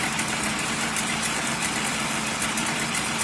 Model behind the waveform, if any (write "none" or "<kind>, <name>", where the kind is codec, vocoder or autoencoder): vocoder, BigVGAN v2